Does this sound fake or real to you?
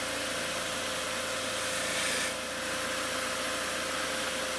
real